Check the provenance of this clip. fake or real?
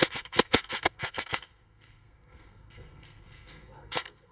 fake